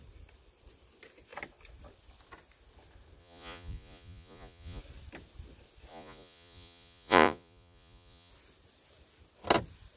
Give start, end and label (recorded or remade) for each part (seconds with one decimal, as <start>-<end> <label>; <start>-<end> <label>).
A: 0.0-3.2 recorded; 3.2-4.8 remade; 4.8-5.9 recorded; 5.9-8.3 remade; 8.3-10.0 recorded